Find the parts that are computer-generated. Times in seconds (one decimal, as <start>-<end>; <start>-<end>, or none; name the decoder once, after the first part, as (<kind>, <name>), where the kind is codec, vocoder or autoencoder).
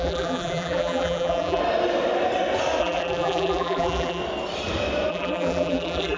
0.0-1.6 (vocoder, BigVGAN v2); 2.8-4.2; 5.1-6.2